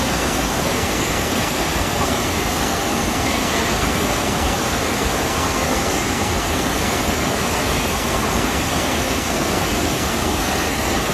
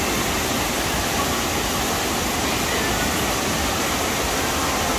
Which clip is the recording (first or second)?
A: second